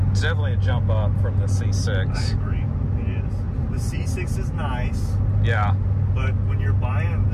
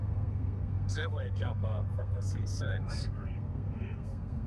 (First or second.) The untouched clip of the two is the first